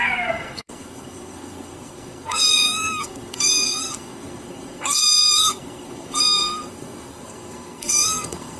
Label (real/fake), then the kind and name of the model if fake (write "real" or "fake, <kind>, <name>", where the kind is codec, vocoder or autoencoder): fake, codec, SNAC